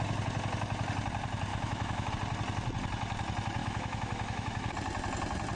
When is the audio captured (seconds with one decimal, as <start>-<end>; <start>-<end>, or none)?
0.0-1.5; 2.1-3.6; 4.7-5.6